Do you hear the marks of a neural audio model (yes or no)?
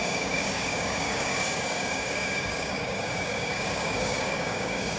yes